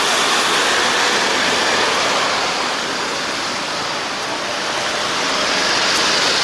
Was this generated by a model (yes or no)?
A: no